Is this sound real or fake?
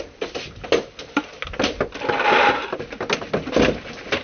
real